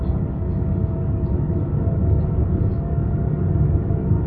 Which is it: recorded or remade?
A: remade